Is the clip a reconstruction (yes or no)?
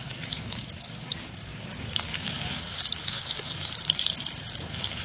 yes